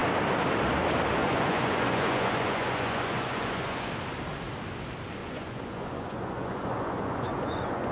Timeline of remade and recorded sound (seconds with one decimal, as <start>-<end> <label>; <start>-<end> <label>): 0.0-1.2 recorded; 1.2-3.9 remade; 3.9-5.2 recorded; 5.2-7.9 remade